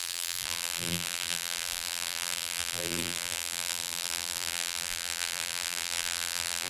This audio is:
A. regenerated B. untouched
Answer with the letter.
A